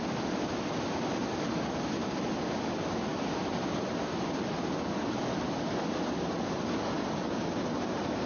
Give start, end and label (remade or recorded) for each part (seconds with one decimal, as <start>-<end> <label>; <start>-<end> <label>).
0.0-8.3 recorded